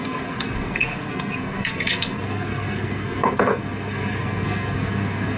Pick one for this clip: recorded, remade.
remade